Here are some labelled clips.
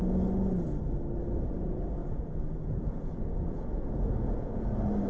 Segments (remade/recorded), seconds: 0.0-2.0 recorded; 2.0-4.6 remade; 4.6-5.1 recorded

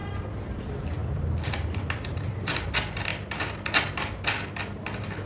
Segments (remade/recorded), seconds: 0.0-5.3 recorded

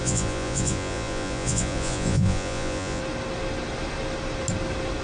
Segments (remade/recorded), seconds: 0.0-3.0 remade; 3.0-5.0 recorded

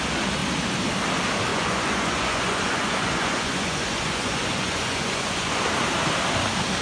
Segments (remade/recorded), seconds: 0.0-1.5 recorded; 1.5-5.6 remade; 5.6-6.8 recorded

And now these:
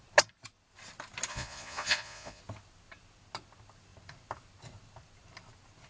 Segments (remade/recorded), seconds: 0.0-1.3 recorded; 1.3-2.4 remade; 2.4-5.9 recorded

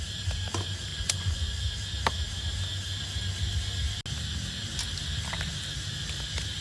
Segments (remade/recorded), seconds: 0.0-0.9 recorded; 0.9-1.6 remade; 1.6-6.6 recorded

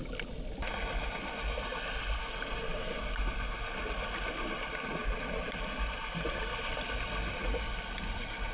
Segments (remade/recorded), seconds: 0.0-8.5 recorded

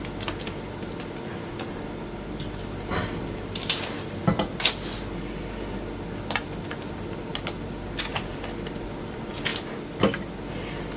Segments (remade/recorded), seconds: 0.0-11.0 recorded